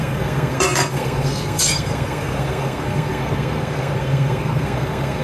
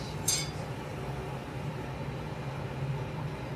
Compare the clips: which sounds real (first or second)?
second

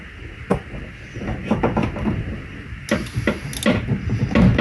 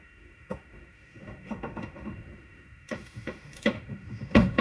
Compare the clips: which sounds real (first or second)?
first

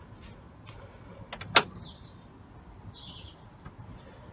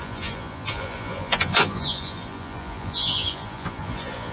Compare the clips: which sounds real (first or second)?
first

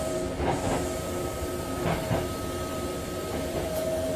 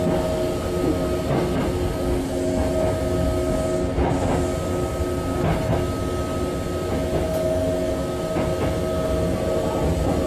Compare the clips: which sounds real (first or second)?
second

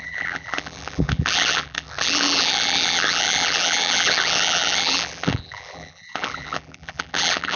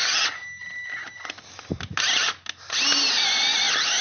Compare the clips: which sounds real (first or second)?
second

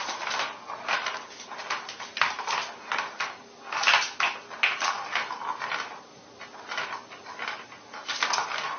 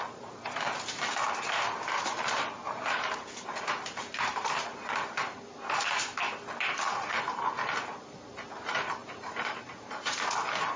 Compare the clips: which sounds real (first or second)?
first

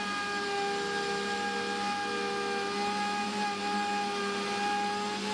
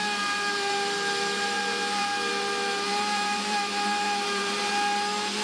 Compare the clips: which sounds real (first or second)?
first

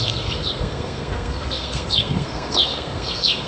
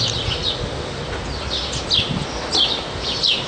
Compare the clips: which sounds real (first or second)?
second